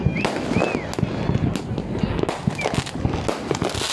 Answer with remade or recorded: recorded